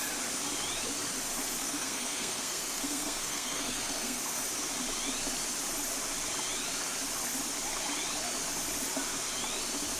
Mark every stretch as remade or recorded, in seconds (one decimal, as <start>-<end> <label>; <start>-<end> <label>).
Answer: 0.0-1.6 recorded; 1.6-4.2 remade; 4.2-10.0 recorded